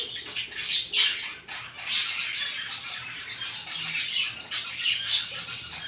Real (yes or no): yes